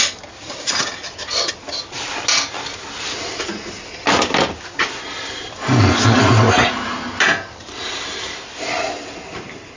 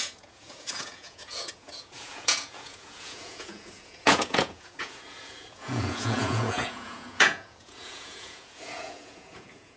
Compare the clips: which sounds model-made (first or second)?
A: second